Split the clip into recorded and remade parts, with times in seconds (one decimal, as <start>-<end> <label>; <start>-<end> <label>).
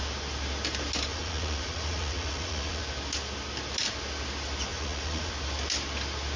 0.0-1.1 recorded; 1.1-2.8 remade; 2.8-4.7 recorded; 4.7-5.3 remade; 5.3-6.4 recorded